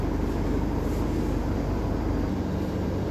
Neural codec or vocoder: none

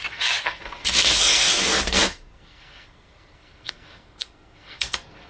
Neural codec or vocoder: codec, SNAC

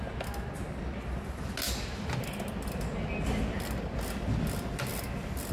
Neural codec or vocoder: none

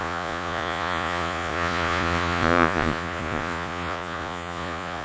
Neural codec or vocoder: vocoder, Vocos